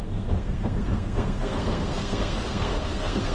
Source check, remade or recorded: remade